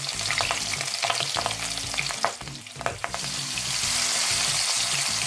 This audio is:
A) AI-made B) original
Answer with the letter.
B